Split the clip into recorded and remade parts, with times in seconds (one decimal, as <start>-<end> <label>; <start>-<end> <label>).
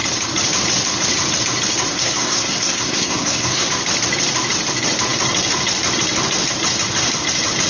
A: 0.0-1.9 recorded; 1.9-3.7 remade; 3.7-7.7 recorded